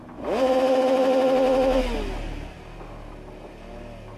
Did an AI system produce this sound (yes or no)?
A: no